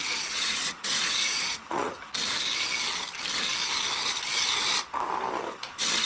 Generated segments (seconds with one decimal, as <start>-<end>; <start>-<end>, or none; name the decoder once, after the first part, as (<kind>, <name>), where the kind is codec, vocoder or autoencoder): 0.0-2.0 (vocoder, Vocos)